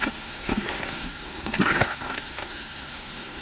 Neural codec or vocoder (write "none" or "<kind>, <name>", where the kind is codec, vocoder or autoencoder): codec, SNAC